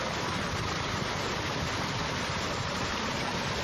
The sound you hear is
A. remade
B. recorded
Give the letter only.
A